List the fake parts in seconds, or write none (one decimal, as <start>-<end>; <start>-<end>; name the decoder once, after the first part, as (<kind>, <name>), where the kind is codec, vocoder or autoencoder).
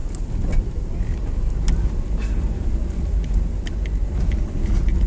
none